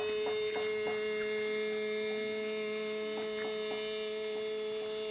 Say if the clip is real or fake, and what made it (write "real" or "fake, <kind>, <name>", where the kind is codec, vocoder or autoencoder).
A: real